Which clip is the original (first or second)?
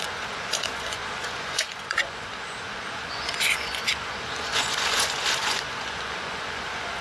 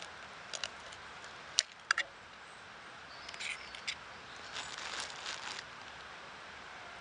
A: second